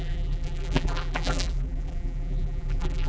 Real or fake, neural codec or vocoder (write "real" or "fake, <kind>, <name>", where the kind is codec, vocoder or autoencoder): fake, vocoder, BigVGAN v2